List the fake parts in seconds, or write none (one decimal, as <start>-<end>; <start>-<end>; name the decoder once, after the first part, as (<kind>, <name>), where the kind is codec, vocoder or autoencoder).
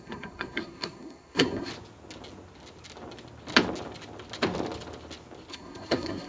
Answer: 0.0-1.7 (codec, SNAC); 5.5-6.3